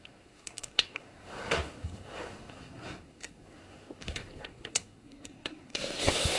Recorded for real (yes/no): no